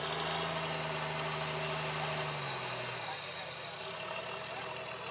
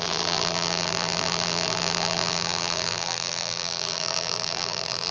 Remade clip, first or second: second